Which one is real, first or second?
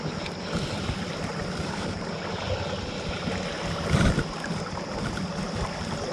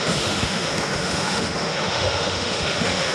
first